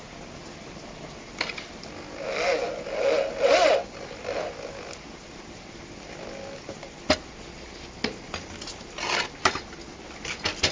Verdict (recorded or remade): recorded